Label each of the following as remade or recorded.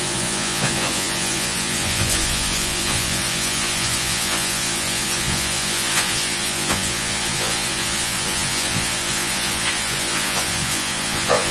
remade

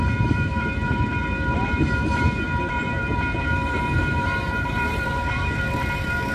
remade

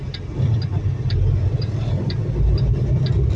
recorded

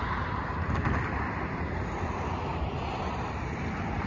recorded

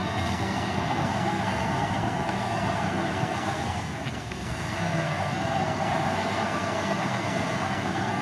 remade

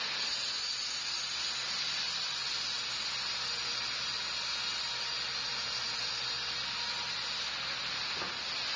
recorded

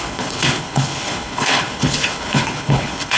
remade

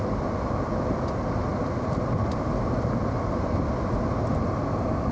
recorded